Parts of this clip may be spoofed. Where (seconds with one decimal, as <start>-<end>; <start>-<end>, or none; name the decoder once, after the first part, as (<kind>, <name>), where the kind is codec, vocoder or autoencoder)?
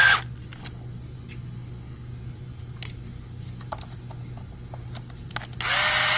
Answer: none